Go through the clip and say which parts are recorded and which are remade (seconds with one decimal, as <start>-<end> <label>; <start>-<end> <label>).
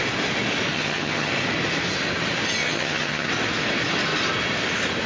0.0-0.7 recorded; 0.7-1.3 remade; 1.3-2.6 recorded; 2.6-3.3 remade; 3.3-5.1 recorded